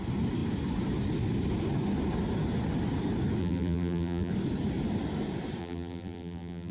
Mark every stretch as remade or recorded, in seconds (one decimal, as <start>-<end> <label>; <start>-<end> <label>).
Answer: 0.0-3.4 recorded; 3.4-4.3 remade; 4.3-5.6 recorded; 5.6-6.7 remade